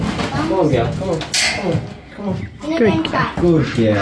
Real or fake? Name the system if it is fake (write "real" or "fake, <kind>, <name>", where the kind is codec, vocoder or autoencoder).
real